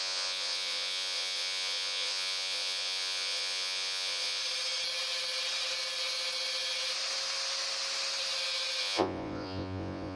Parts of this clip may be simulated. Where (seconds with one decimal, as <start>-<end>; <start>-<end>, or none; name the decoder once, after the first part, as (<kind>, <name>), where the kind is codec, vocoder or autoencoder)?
0.0-4.4 (vocoder, Vocos); 8.8-10.2